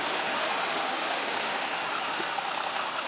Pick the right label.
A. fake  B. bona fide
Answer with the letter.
A